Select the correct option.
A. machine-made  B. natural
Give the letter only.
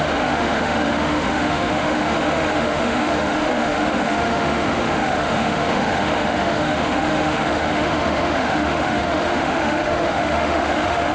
A